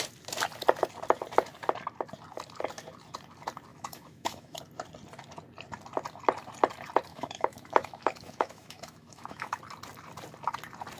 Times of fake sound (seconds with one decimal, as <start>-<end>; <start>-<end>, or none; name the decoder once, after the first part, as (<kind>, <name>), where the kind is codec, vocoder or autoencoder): 3.7-4.6 (autoencoder, DAC-VAE); 7.1-9.6